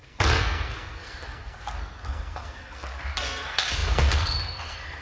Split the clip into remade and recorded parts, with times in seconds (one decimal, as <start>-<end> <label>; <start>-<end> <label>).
0.0-5.0 remade